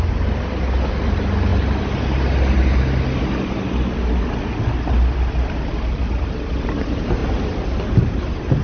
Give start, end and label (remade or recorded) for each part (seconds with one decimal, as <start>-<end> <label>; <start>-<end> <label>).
0.0-7.2 recorded; 7.2-7.8 remade; 7.8-8.6 recorded